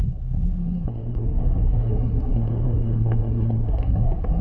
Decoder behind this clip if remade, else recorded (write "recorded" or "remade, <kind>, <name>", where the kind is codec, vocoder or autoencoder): remade, codec, SNAC